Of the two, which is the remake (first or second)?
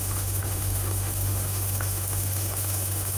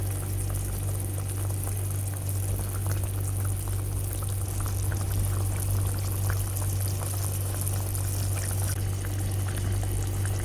first